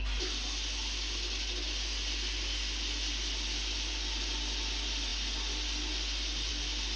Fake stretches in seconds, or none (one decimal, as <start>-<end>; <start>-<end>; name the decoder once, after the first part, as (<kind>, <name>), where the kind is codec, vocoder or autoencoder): none